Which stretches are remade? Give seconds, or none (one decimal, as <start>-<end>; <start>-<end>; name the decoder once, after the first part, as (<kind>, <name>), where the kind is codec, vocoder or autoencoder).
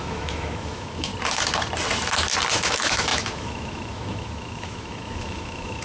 0.0-1.1 (autoencoder, DAC-VAE); 2.5-5.8